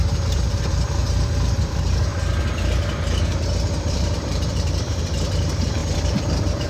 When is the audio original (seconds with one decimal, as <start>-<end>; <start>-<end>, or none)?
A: 1.0-1.6; 2.1-3.9

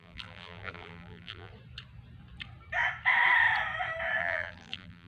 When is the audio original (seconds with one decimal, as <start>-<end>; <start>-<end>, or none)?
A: 1.5-4.2

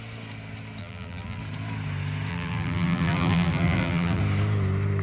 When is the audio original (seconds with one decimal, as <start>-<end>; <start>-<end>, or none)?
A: 0.0-0.8; 1.4-2.3; 4.2-5.0

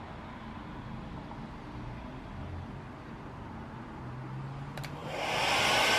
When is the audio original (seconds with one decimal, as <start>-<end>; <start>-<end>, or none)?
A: 0.0-6.0

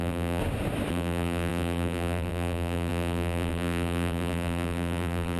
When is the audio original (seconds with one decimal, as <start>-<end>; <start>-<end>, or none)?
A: 0.4-0.9